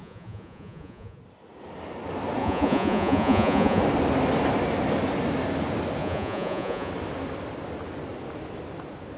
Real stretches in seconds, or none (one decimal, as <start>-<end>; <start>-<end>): 1.2-2.4; 3.8-6.0; 6.9-9.2